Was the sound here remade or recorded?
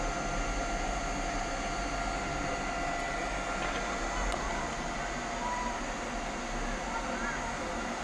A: recorded